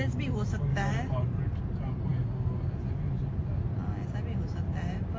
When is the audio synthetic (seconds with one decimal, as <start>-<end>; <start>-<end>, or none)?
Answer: none